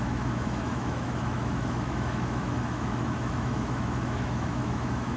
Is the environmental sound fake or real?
fake